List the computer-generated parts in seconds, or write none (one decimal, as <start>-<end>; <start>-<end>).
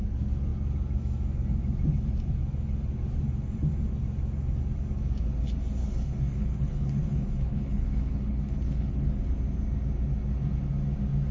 5.8-9.2